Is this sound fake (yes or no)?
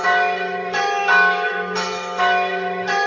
yes